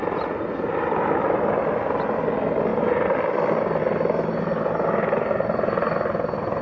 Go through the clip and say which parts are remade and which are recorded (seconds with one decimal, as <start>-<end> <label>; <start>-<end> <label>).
0.0-0.7 remade; 0.7-6.6 recorded